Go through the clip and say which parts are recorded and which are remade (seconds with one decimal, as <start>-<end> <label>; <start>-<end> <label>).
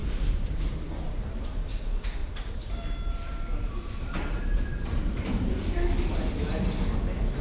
0.0-1.7 remade; 1.7-2.2 recorded; 2.2-5.5 remade; 5.5-7.4 recorded